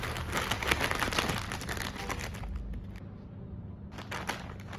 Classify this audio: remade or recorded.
recorded